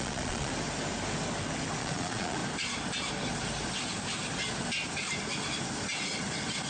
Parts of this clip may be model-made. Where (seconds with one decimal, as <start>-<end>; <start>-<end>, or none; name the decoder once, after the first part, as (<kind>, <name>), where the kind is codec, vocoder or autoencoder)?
0.0-0.5 (vocoder, Vocos); 1.8-2.4